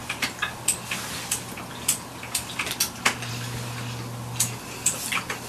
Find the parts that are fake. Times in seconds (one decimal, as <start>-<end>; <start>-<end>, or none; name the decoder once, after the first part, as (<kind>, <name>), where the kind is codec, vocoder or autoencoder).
none